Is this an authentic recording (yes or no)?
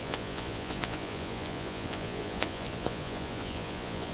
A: no